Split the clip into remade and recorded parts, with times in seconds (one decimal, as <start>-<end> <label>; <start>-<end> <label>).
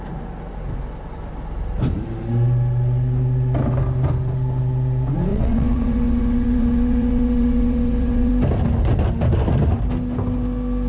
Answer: 0.0-5.3 recorded; 5.3-8.3 remade; 8.3-10.9 recorded